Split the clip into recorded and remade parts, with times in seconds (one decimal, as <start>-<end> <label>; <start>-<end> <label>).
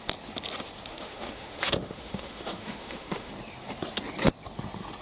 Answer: 0.0-0.9 recorded; 0.9-3.3 remade; 3.3-5.0 recorded